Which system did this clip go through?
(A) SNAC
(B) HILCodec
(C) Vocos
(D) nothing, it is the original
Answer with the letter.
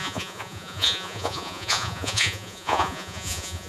C